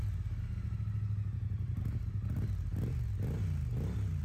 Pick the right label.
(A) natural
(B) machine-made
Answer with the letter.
A